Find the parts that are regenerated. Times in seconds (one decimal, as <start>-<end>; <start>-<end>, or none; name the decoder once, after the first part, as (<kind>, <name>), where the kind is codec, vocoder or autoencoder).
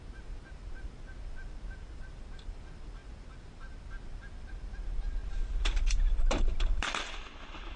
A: none